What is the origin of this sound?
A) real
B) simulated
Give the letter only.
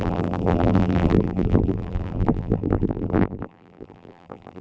B